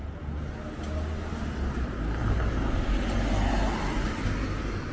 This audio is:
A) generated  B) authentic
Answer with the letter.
B